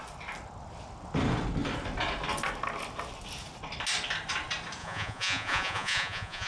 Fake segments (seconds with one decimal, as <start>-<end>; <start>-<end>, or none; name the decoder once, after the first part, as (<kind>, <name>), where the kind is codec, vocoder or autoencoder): 4.8-6.5 (vocoder, Vocos)